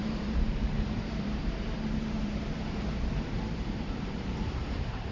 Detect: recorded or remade remade